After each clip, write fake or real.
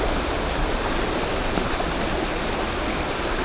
real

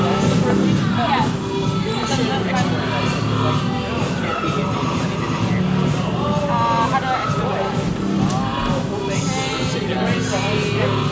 real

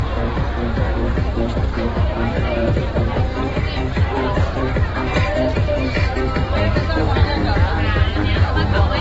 fake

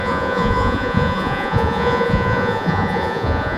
fake